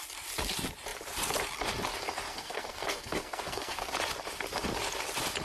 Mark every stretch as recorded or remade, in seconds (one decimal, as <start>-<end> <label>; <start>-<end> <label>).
0.0-2.3 recorded; 2.3-3.9 remade; 3.9-5.4 recorded